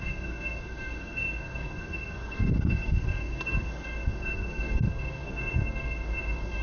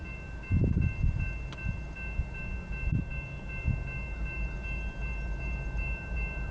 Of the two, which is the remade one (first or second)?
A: first